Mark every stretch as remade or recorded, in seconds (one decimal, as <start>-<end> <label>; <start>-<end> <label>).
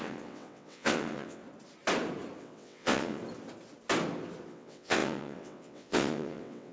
0.0-1.4 remade; 1.4-2.4 recorded; 2.4-3.2 remade; 3.2-4.5 recorded; 4.5-6.7 remade